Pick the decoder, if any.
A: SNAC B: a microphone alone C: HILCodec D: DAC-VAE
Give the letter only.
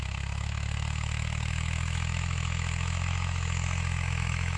D